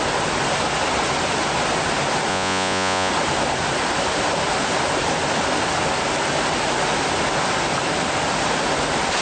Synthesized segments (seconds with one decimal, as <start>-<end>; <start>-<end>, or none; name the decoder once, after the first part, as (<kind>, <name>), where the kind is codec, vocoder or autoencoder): 2.3-3.1 (vocoder, Vocos)